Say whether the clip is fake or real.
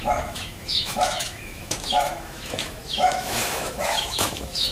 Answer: fake